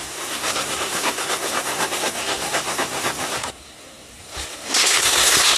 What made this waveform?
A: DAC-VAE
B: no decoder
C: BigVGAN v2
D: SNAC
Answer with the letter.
D